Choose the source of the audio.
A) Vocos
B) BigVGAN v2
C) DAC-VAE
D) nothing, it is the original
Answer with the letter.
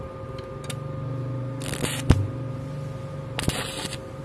D